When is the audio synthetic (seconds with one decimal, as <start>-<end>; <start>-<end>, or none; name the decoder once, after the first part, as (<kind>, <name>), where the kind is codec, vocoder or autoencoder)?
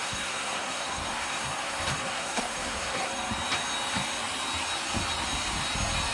0.0-3.1 (codec, SNAC)